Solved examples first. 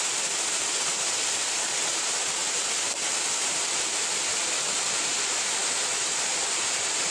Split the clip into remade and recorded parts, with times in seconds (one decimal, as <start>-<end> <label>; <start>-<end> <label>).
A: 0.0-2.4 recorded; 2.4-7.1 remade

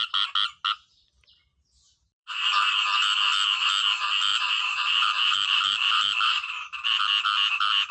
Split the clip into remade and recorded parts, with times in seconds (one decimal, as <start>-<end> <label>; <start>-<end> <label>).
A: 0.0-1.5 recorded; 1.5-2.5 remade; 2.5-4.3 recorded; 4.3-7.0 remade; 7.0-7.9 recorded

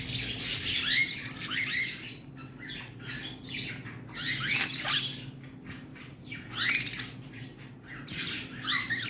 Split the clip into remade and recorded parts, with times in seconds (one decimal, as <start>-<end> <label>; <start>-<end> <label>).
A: 0.0-5.9 recorded; 5.9-6.5 remade; 6.5-9.1 recorded